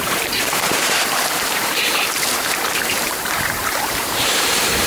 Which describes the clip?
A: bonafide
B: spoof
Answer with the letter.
B